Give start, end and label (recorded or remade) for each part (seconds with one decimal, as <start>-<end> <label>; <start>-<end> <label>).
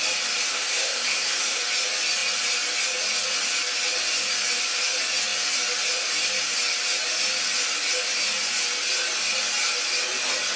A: 0.0-0.5 recorded; 0.5-1.6 remade; 1.6-10.6 recorded